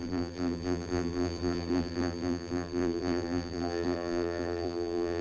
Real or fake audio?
fake